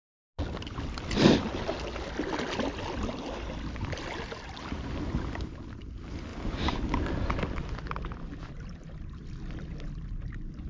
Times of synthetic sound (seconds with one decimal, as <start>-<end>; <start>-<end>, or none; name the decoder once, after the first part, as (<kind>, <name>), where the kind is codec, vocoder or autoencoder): none

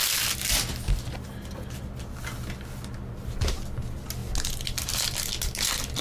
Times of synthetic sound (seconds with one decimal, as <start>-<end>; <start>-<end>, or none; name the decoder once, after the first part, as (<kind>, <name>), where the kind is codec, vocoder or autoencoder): none

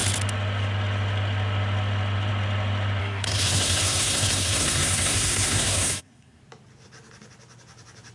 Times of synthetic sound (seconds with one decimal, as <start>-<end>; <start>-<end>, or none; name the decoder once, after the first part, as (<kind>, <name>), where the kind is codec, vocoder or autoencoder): 3.0-6.4 (codec, SNAC)

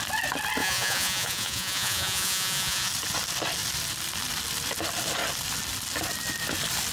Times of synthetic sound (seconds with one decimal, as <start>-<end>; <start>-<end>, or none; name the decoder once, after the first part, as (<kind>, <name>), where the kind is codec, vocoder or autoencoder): 0.6-2.9 (vocoder, Vocos)

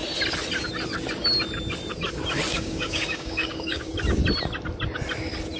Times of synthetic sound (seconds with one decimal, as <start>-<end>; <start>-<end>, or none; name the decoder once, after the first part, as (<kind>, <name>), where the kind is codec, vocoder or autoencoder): 2.5-3.9 (codec, DAC)

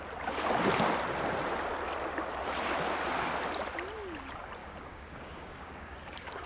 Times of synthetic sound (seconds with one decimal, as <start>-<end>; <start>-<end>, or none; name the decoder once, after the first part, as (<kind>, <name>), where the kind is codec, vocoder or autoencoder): 4.6-6.5 (codec, DAC)